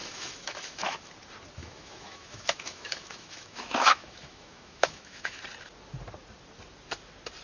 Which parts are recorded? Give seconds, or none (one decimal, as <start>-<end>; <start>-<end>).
1.0-1.6; 5.4-7.4